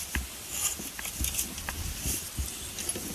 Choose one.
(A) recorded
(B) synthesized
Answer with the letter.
A